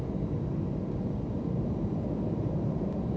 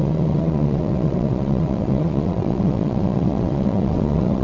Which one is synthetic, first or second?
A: second